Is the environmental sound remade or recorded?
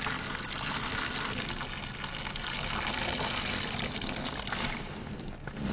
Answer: recorded